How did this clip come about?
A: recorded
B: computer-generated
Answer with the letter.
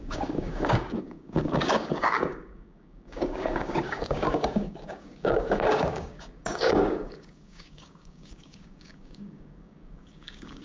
B